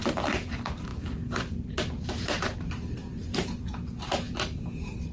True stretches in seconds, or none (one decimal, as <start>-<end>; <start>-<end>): 0.9-2.1; 3.3-5.1